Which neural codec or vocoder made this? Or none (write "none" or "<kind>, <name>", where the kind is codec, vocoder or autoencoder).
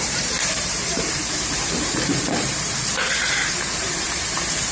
vocoder, BigVGAN v2